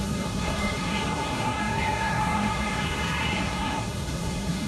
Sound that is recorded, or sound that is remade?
remade